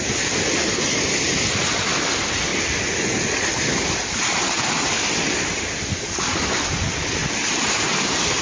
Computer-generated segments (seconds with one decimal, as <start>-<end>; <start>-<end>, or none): 7.2-8.4